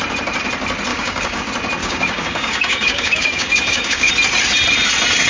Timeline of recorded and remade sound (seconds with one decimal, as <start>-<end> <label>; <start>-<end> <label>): 0.0-0.9 recorded; 0.9-1.4 remade; 1.4-1.8 recorded; 1.8-4.1 remade; 4.1-5.3 recorded